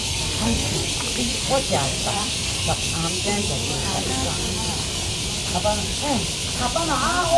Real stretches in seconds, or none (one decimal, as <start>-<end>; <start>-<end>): 0.9-1.3; 5.3-7.4